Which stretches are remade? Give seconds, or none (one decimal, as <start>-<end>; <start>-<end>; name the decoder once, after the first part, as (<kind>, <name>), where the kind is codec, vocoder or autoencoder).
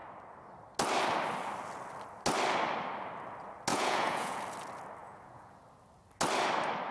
3.7-4.4 (vocoder, Vocos); 5.0-5.6